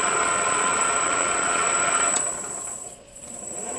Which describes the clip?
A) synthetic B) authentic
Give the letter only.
A